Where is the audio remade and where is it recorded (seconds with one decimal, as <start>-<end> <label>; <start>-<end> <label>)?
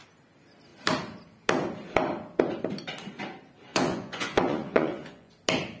0.0-3.7 recorded; 3.7-5.3 remade; 5.3-5.8 recorded